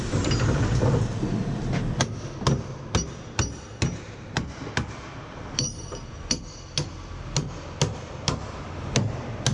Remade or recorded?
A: recorded